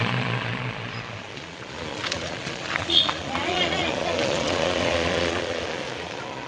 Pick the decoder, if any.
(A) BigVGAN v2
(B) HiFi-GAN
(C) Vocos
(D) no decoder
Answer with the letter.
C